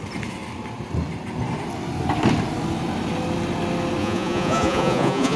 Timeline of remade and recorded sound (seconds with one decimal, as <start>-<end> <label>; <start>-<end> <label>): 0.0-4.0 recorded; 4.0-5.4 remade